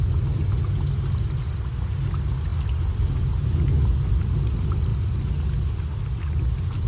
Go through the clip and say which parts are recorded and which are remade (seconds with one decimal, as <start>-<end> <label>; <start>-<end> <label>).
0.0-6.9 recorded